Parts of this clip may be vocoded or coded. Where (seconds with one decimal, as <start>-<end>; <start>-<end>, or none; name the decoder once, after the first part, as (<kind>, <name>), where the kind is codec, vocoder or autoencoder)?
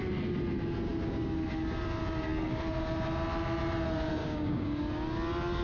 4.2-4.8 (codec, DAC)